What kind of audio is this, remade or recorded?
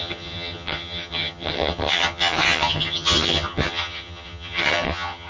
remade